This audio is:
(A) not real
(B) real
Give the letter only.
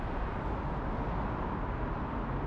B